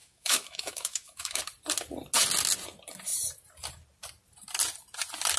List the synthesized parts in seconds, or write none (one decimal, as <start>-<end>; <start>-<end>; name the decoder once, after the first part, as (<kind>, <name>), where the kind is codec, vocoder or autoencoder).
0.0-1.4 (autoencoder, DAC-VAE)